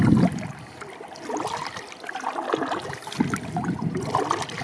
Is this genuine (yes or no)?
yes